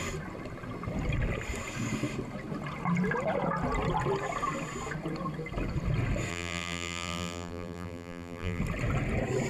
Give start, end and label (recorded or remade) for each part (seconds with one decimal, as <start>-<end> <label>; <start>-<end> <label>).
0.0-6.3 recorded; 6.3-8.6 remade; 8.6-9.5 recorded